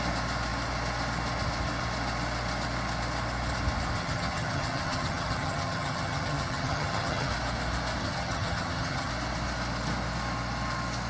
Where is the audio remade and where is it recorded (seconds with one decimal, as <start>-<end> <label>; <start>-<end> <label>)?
0.0-4.0 recorded; 4.0-7.3 remade; 7.3-8.0 recorded; 8.0-9.1 remade; 9.1-11.1 recorded